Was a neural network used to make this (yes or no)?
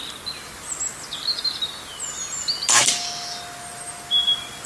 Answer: no